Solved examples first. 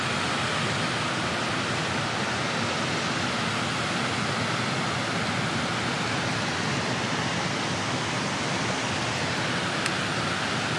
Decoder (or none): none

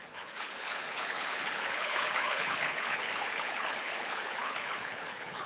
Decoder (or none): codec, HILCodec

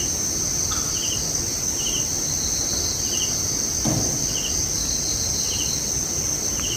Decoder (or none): none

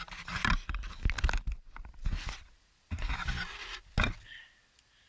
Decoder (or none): none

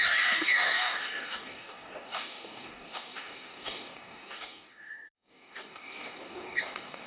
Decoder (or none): codec, DAC